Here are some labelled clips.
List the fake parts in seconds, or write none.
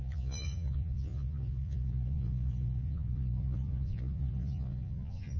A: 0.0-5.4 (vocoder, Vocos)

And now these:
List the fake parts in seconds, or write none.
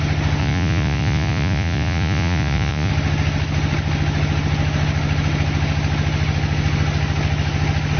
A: 0.4-2.9 (vocoder, Vocos)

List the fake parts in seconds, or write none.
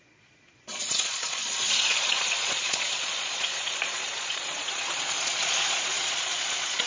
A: 0.0-6.9 (vocoder, Vocos)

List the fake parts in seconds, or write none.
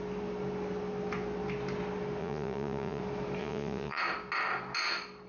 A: 2.2-3.0 (vocoder, Vocos); 3.4-4.0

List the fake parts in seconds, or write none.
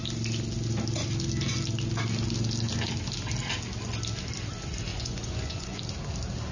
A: 4.9-5.8 (vocoder, Vocos)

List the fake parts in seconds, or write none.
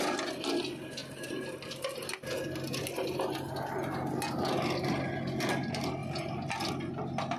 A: none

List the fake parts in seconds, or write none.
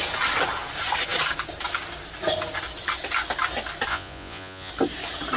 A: 3.9-4.7 (vocoder, Vocos)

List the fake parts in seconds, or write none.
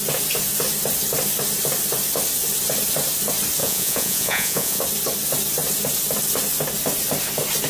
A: 3.6-4.8 (vocoder, Vocos)